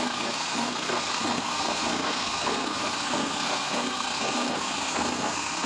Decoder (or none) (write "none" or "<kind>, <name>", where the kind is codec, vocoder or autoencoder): codec, SNAC